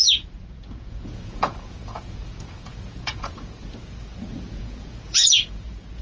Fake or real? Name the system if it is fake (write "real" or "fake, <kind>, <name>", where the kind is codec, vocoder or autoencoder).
fake, vocoder, Vocos